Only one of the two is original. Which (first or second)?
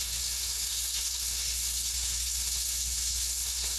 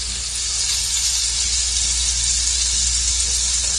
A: second